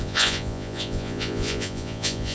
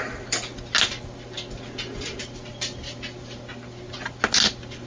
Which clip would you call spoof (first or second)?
first